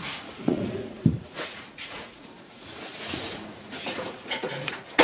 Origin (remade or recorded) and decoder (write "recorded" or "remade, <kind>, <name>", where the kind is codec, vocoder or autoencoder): remade, vocoder, Vocos